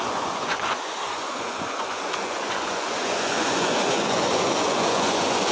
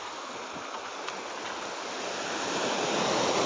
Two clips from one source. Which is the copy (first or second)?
first